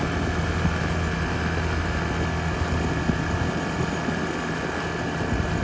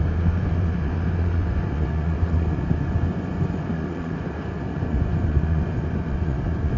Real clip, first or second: first